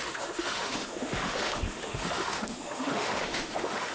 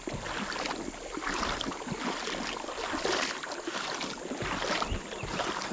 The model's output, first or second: first